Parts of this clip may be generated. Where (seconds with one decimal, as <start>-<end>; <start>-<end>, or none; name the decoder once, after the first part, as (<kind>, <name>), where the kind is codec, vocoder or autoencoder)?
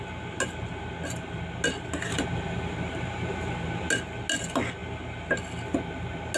2.1-3.9 (vocoder, BigVGAN v2)